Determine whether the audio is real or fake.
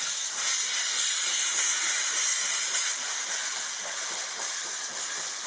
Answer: fake